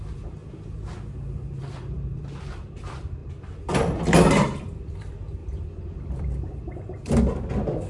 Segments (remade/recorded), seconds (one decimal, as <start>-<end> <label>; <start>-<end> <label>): 0.0-0.4 remade; 0.4-1.6 recorded; 1.6-3.2 remade; 3.2-4.6 recorded; 4.6-5.4 remade; 5.4-6.2 recorded; 6.2-7.9 remade

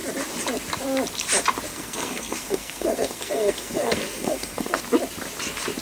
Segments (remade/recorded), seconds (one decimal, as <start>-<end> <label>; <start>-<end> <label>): 0.0-1.7 recorded; 1.7-4.8 remade; 4.8-5.8 recorded

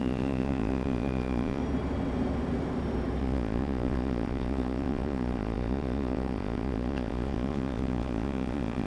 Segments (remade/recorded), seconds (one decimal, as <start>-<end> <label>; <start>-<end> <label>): 0.0-1.6 remade; 1.6-3.2 recorded; 3.2-8.9 remade

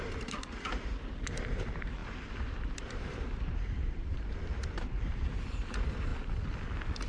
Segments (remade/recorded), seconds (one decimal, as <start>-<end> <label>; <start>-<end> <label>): 0.0-6.1 remade; 6.1-7.1 recorded

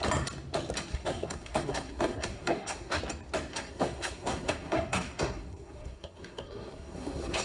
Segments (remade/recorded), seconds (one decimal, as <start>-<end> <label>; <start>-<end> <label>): 0.0-0.9 recorded; 0.9-3.0 remade; 3.0-3.5 recorded; 3.5-7.4 remade

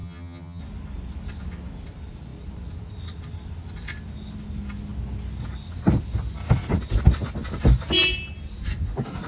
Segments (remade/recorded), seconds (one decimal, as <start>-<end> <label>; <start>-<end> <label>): 0.0-0.6 remade; 0.6-9.3 recorded